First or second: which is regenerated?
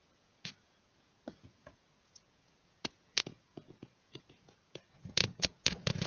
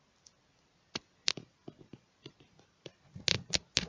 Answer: first